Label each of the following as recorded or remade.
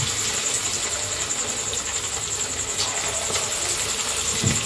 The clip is recorded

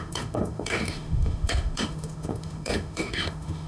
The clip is remade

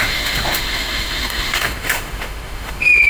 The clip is remade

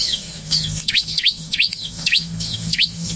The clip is remade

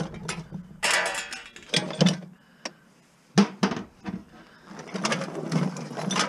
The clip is recorded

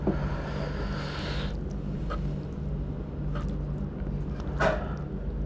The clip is recorded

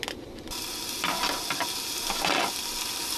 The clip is recorded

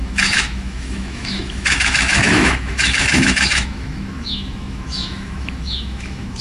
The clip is remade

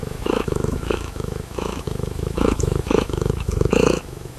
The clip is remade